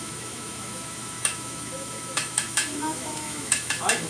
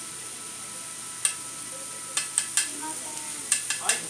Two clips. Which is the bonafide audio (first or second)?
second